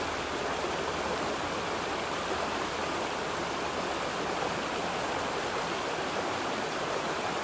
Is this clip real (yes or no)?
yes